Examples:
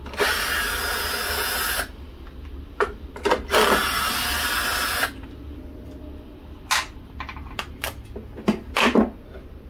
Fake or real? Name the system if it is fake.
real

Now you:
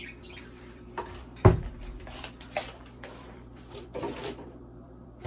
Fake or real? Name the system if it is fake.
fake, vocoder, BigVGAN v2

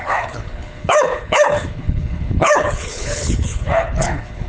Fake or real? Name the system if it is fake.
fake, codec, HILCodec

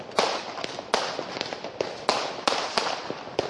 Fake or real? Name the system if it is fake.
fake, vocoder, BigVGAN v2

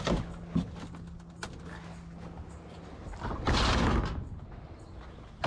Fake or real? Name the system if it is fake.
real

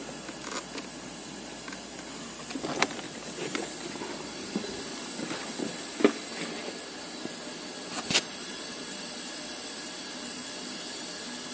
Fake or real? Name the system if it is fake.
real